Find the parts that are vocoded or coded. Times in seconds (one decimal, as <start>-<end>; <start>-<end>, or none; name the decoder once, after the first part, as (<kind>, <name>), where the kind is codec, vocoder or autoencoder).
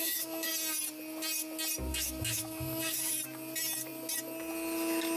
0.0-0.5 (autoencoder, DAC-VAE); 1.9-3.1